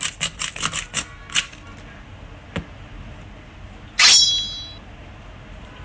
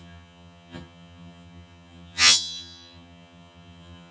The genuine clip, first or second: first